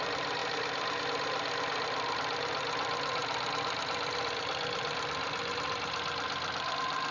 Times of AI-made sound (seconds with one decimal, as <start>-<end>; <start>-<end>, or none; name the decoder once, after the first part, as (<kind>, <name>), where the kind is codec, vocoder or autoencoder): none